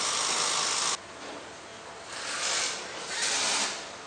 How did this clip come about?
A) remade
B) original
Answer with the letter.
B